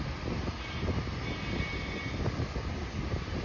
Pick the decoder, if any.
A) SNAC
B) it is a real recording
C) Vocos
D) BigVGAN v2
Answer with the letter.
B